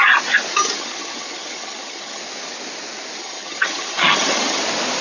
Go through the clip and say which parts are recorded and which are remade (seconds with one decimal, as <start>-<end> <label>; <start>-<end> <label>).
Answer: 0.0-0.5 recorded; 0.5-2.2 remade; 2.2-3.2 recorded; 3.2-4.6 remade; 4.6-5.0 recorded